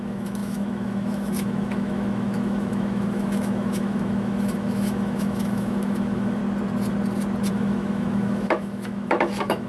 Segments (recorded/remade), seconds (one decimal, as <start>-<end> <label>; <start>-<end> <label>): 0.0-6.4 remade; 6.4-7.5 recorded; 7.5-9.7 remade